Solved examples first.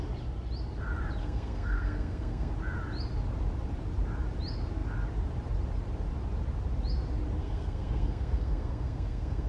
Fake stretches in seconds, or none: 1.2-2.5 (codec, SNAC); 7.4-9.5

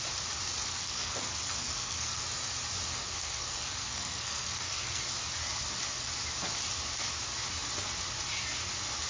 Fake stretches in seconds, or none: 0.6-2.2 (codec, SNAC); 2.9-5.0

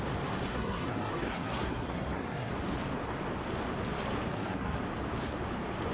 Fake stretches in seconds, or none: 0.5-2.5 (codec, SNAC); 4.3-4.8

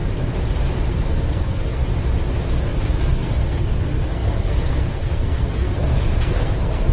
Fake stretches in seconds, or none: 0.9-1.8 (codec, SNAC); 3.0-6.9